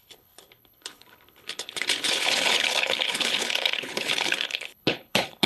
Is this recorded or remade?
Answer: remade